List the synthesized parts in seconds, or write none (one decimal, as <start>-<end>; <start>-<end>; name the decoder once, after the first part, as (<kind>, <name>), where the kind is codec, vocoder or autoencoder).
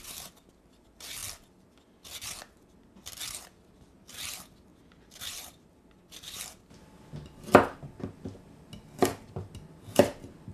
none